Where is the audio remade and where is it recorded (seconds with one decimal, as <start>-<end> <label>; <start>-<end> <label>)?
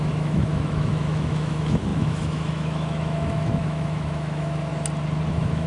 0.0-4.7 remade; 4.7-5.3 recorded; 5.3-5.7 remade